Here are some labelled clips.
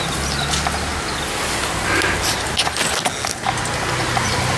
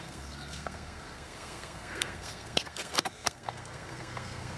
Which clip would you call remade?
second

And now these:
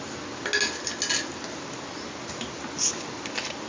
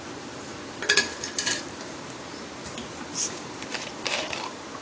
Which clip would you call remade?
second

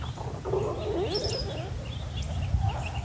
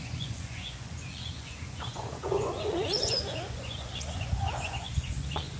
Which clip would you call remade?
second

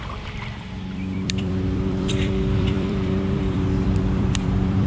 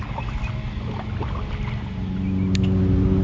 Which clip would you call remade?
first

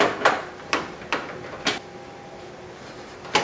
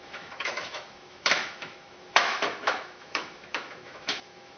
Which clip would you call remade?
second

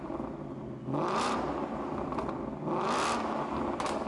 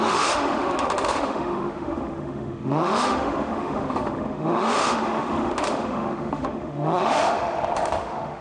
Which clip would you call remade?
second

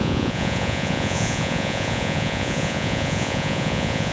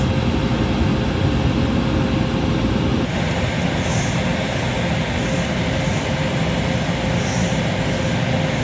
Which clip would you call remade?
first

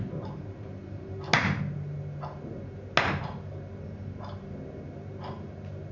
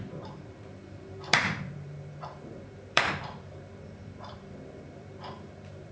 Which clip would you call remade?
second